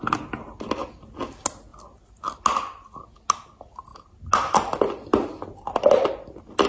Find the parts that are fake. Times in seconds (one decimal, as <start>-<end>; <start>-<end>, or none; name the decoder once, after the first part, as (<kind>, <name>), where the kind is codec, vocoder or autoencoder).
none